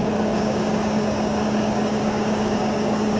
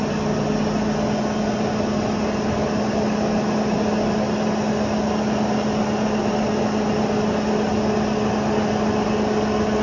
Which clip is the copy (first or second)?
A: first